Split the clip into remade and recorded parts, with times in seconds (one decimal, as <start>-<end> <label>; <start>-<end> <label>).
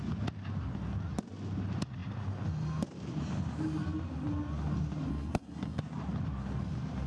0.0-5.1 recorded; 5.1-5.8 remade; 5.8-7.1 recorded